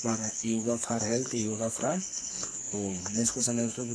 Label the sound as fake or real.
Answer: fake